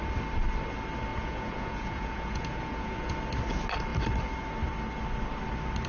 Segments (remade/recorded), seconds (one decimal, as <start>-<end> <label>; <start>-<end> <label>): 0.0-1.1 recorded; 1.1-3.2 remade; 3.2-5.9 recorded